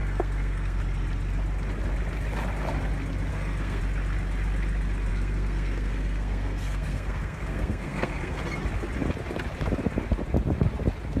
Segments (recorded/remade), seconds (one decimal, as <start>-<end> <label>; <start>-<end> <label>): 0.0-0.8 remade; 0.8-3.3 recorded; 3.3-3.8 remade; 3.8-5.1 recorded; 5.1-8.4 remade; 8.4-11.2 recorded